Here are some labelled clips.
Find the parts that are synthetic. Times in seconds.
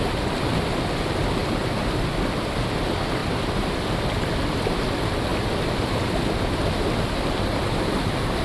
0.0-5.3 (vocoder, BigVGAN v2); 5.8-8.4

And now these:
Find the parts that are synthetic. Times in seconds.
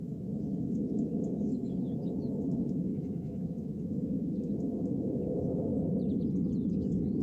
0.0-5.7 (autoencoder, DAC-VAE); 6.7-7.2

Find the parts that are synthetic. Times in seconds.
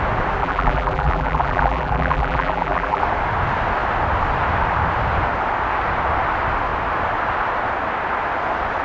0.4-3.0 (vocoder, BigVGAN v2)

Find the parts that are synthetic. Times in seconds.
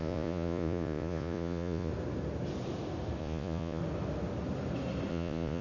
0.0-1.9 (vocoder, Vocos); 3.2-3.8; 5.1-5.6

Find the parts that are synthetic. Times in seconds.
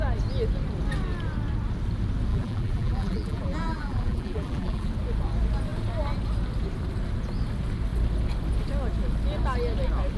2.3-4.9 (vocoder, BigVGAN v2)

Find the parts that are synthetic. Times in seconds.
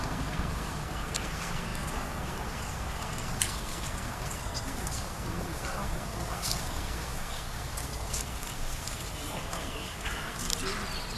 0.0-10.5 (codec, SNAC)